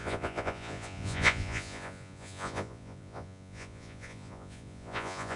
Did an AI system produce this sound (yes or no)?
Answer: yes